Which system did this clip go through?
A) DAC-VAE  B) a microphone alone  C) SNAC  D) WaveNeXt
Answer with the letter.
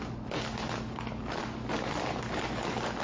B